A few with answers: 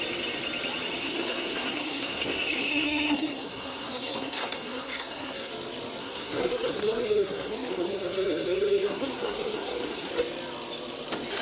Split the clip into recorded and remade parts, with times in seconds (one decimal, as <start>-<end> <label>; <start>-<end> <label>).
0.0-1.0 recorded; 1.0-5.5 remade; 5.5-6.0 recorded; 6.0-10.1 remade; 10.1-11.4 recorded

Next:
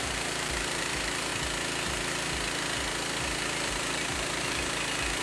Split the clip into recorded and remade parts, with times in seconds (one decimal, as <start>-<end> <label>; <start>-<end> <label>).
0.0-1.3 remade; 1.3-3.7 recorded; 3.7-5.2 remade

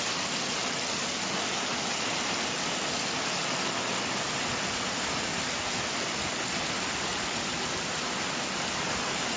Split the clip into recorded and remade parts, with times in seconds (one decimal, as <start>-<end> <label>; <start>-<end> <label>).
0.0-9.4 recorded